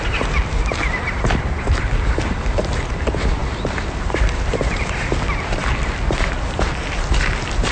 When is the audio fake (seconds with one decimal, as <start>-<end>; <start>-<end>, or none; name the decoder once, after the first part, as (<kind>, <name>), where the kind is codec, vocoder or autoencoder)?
none